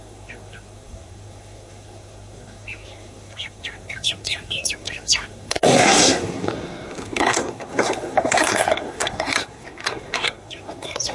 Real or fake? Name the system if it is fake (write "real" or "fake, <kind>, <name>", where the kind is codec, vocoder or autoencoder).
fake, codec, SNAC